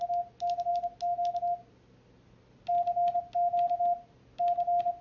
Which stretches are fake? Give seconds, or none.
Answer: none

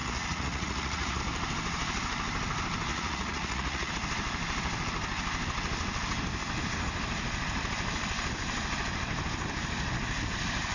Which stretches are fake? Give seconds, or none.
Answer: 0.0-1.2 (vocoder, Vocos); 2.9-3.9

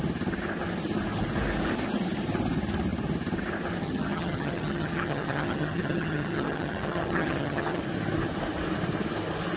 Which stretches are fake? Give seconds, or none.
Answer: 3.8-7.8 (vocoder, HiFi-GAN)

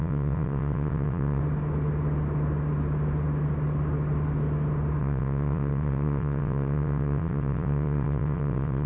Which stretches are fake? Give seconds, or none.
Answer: 0.0-1.4 (vocoder, WaveNeXt); 5.0-8.9